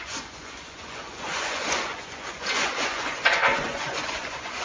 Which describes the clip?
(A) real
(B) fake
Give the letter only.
B